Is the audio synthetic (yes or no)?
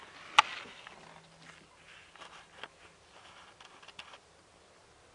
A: no